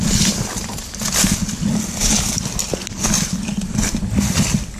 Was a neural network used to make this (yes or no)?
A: no